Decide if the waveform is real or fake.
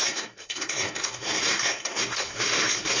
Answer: fake